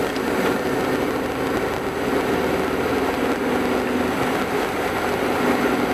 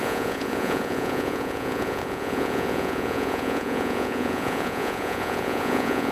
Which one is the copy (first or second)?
second